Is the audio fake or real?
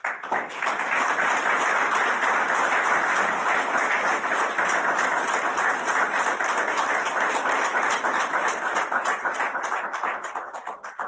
real